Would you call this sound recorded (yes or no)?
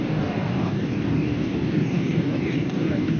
no